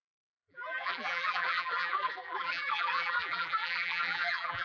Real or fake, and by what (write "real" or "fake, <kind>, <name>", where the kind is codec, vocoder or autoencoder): fake, vocoder, BigVGAN v2